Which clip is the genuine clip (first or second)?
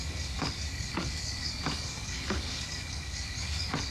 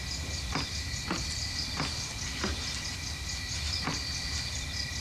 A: second